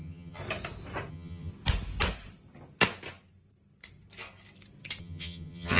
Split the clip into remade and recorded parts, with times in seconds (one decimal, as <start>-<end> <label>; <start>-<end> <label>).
0.0-0.4 remade; 0.4-1.1 recorded; 1.1-1.5 remade; 1.5-5.0 recorded; 5.0-5.8 remade